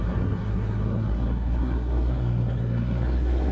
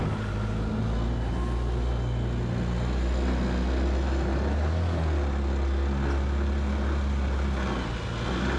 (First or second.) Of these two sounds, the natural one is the second